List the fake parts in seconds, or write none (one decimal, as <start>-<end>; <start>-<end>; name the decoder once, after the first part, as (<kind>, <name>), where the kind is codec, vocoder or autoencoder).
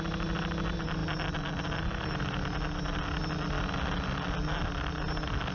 none